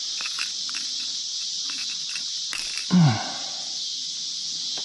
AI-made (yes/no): no